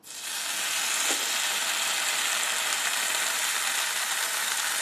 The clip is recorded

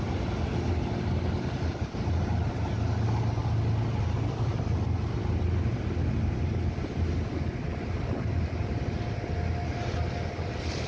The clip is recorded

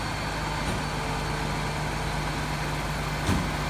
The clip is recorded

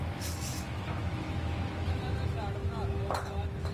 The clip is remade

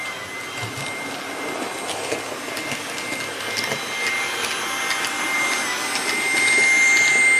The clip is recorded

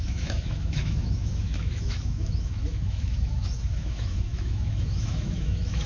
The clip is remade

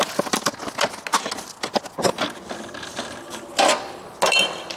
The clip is recorded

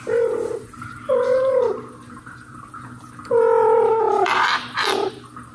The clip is recorded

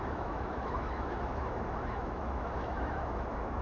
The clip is remade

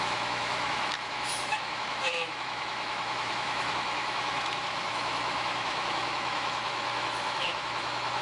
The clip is remade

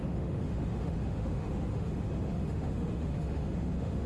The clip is remade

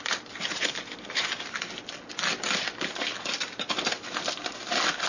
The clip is recorded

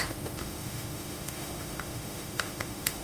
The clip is remade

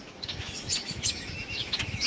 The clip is remade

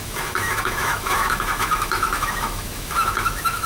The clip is remade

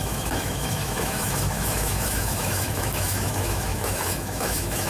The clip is remade